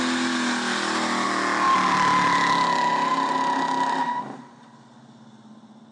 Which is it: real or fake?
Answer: real